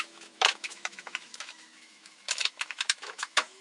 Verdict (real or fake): fake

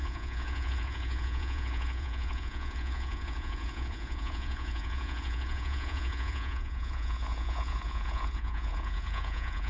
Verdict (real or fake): fake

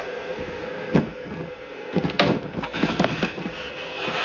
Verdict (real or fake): fake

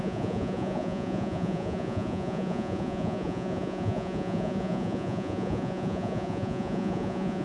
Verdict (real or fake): fake